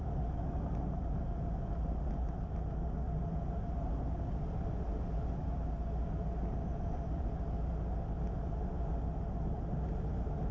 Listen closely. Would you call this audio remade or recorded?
recorded